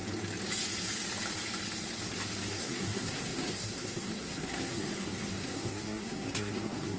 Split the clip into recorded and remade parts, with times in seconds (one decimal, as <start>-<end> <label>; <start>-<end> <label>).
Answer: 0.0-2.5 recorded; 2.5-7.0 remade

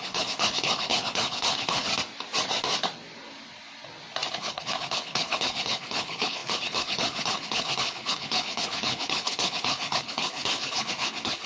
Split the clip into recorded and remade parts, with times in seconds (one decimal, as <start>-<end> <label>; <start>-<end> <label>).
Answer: 0.0-1.9 remade; 1.9-4.3 recorded; 4.3-11.5 remade

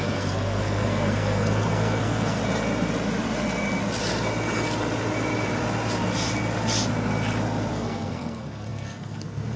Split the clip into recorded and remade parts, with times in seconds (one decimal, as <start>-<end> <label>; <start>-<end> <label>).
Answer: 0.0-2.4 remade; 2.4-7.7 recorded; 7.7-9.6 remade

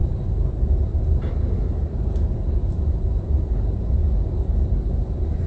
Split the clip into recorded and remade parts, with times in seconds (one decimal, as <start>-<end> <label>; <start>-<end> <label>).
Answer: 0.0-4.0 remade; 4.0-4.5 recorded; 4.5-5.5 remade

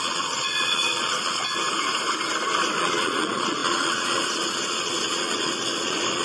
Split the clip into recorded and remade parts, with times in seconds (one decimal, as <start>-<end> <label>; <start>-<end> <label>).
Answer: 0.0-1.6 remade; 1.6-2.8 recorded; 2.8-6.2 remade

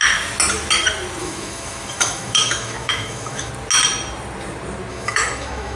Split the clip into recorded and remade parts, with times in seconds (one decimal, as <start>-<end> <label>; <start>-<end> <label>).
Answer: 0.0-1.2 recorded; 1.2-3.5 remade; 3.5-4.9 recorded; 4.9-5.8 remade

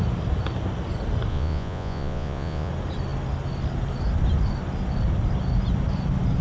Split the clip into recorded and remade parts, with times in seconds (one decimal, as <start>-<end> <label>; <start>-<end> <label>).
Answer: 0.0-1.3 recorded; 1.3-2.7 remade; 2.7-6.4 recorded

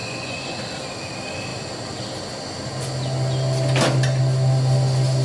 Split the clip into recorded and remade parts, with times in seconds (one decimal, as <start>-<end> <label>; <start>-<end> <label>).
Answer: 0.0-0.6 remade; 0.6-5.2 recorded